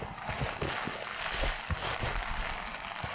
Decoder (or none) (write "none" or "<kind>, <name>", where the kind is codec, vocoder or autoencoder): none